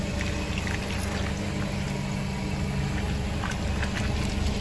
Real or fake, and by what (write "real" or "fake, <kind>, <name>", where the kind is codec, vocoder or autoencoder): real